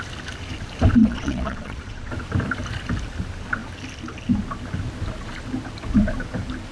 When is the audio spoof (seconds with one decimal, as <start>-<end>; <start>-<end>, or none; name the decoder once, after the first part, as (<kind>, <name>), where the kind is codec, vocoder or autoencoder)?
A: 1.0-2.1 (vocoder, Vocos)